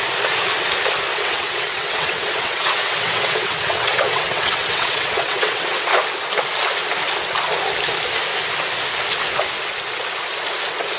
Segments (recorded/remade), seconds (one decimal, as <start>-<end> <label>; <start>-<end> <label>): 0.0-1.1 recorded; 1.1-5.9 remade; 5.9-11.0 recorded